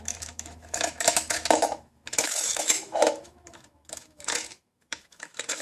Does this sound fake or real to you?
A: fake